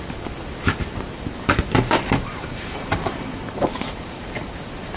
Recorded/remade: remade